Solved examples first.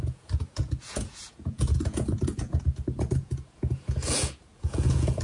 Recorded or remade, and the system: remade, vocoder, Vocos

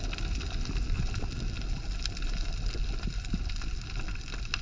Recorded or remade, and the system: recorded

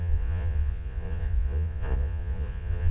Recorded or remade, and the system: remade, vocoder, Vocos